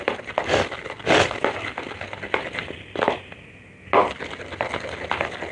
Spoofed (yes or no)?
no